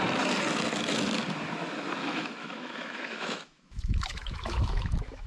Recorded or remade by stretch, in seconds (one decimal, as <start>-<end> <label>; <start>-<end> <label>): 0.0-2.0 recorded; 2.0-5.3 remade